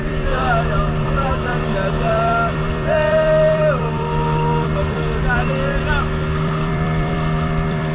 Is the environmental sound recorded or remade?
remade